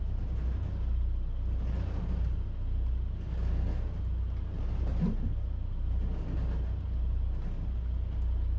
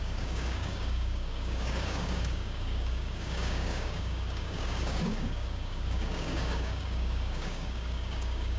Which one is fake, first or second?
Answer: second